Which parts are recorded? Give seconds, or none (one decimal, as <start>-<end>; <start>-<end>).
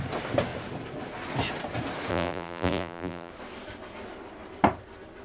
0.0-2.1; 3.3-5.2